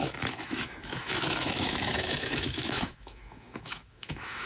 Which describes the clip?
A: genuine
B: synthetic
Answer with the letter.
B